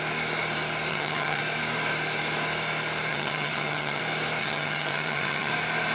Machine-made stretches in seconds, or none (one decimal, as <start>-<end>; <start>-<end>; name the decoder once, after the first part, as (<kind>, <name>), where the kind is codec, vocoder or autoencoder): 0.9-1.4 (vocoder, HiFi-GAN); 3.1-4.0; 4.4-5.5